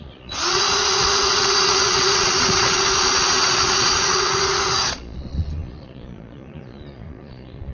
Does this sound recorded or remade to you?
remade